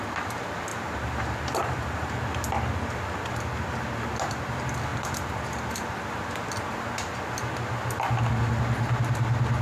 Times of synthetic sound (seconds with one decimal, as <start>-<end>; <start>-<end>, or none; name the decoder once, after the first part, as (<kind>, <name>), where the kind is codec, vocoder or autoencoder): 0.7-2.1 (vocoder, BigVGAN v2)